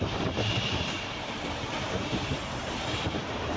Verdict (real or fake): fake